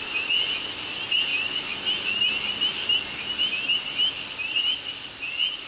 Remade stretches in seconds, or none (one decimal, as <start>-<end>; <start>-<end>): none